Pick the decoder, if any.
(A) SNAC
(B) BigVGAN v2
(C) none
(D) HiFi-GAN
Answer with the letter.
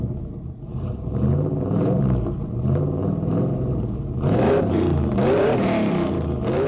B